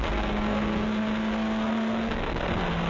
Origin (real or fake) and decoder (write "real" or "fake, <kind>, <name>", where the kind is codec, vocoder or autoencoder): fake, codec, SNAC